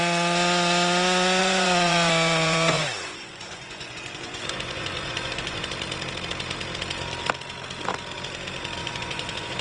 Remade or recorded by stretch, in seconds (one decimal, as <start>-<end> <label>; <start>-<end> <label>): 0.0-1.4 recorded; 1.4-5.7 remade; 5.7-8.8 recorded; 8.8-9.6 remade